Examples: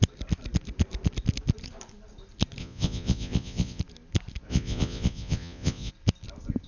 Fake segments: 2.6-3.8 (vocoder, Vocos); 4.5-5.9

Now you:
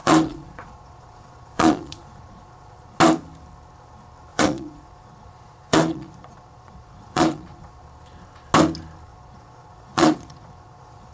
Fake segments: 0.0-3.0 (vocoder, Vocos); 4.3-7.8; 9.1-11.1

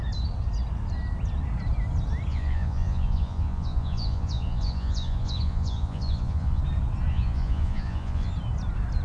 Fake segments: 2.3-6.6 (vocoder, Vocos); 7.1-8.3

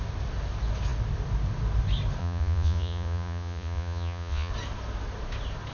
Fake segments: 2.2-4.5 (vocoder, Vocos)

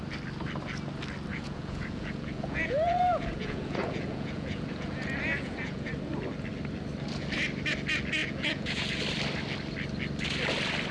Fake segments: 1.3-5.9 (vocoder, Vocos); 8.2-9.0